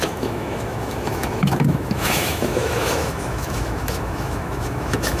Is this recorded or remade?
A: remade